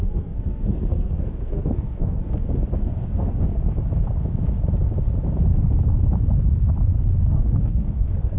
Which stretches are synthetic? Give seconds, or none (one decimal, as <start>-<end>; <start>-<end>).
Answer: 0.0-2.2; 2.8-3.5; 7.2-8.4